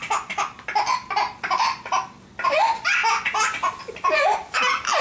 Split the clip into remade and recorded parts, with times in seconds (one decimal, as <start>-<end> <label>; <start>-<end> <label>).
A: 0.0-5.0 recorded